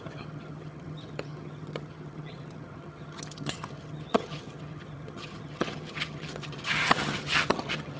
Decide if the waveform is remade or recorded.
remade